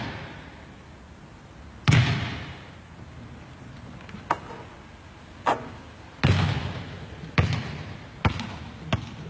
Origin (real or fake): real